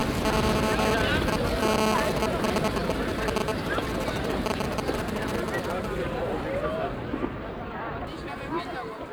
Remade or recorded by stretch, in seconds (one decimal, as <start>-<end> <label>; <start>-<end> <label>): 0.0-3.4 recorded; 3.4-5.8 remade; 5.8-9.1 recorded